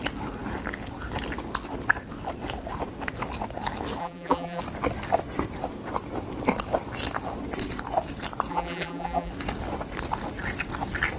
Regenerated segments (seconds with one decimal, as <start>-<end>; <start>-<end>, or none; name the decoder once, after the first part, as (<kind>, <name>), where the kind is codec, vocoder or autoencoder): 4.0-4.6 (vocoder, BigVGAN v2); 8.5-9.3